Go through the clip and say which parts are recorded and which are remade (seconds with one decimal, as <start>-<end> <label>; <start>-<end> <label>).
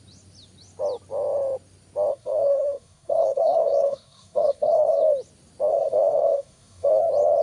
0.0-2.1 recorded; 2.1-5.0 remade; 5.0-5.7 recorded; 5.7-7.0 remade; 7.0-7.4 recorded